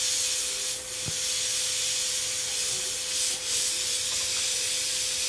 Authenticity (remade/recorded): recorded